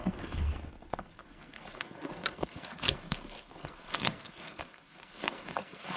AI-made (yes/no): yes